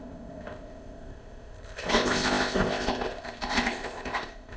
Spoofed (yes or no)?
yes